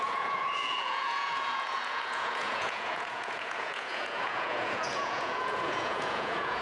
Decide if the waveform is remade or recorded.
remade